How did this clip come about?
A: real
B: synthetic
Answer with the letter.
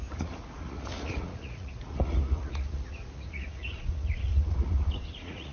B